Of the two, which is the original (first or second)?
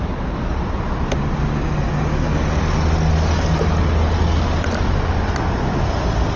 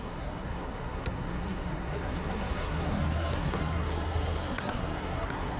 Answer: first